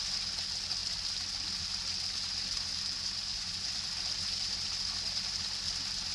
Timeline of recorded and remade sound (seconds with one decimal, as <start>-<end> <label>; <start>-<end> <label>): 0.0-3.3 recorded; 3.3-3.8 remade; 3.8-6.1 recorded